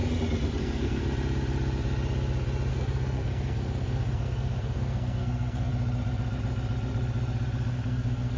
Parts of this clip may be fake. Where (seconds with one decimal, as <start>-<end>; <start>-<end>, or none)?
0.6-1.0; 2.7-5.7; 7.7-8.4